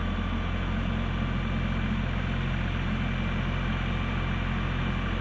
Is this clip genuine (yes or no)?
yes